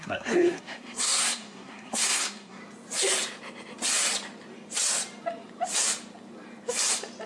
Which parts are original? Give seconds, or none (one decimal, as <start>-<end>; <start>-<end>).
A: 2.6-7.3